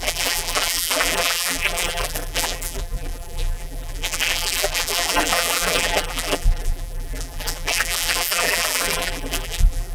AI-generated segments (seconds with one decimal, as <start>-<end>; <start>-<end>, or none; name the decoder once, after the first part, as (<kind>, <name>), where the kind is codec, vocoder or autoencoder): 0.0-9.9 (vocoder, BigVGAN v2)